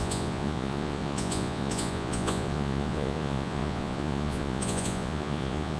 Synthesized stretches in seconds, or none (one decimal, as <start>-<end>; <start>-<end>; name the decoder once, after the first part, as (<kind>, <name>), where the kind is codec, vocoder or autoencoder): 0.0-5.8 (vocoder, Vocos)